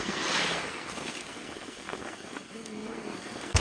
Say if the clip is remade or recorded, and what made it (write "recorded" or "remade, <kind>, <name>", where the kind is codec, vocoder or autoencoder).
remade, codec, SNAC